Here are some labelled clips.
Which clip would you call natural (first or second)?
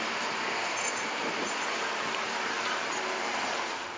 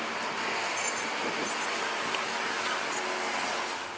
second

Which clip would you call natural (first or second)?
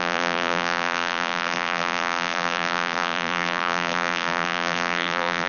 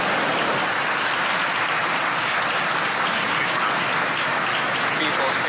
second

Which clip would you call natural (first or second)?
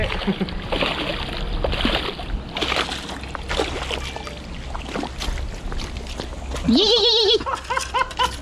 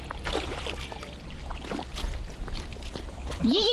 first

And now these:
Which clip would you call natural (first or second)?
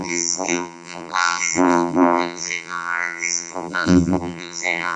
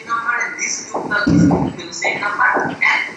second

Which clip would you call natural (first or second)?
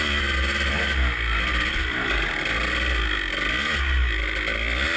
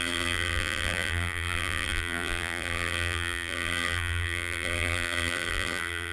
first